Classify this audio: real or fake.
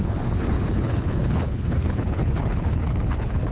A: fake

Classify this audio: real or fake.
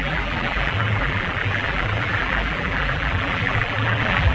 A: fake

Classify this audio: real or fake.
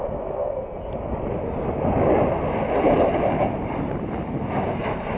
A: real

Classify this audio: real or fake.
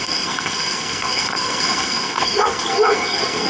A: fake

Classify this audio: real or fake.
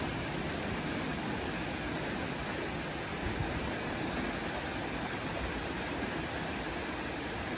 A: real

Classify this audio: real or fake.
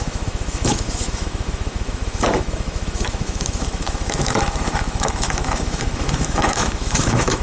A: fake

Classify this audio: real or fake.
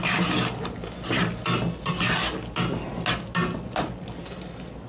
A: real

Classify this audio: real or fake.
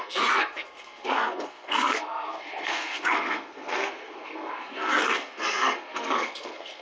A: fake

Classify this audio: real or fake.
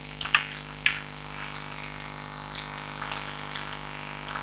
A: real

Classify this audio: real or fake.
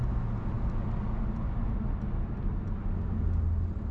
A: real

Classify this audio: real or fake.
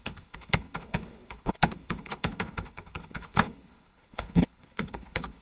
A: fake